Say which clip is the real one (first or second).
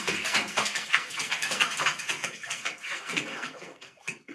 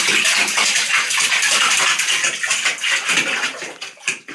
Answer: second